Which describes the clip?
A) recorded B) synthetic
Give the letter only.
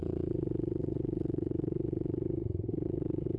B